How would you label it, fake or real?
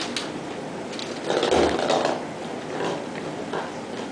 real